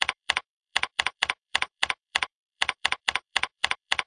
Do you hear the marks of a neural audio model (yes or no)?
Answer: yes